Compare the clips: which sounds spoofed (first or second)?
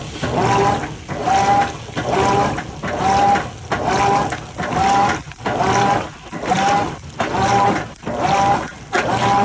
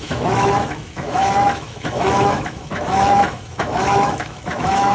second